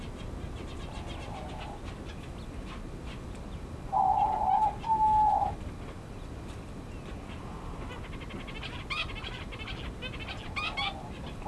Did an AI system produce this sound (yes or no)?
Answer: no